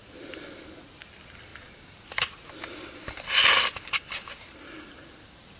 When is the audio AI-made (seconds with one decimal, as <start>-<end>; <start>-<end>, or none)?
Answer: none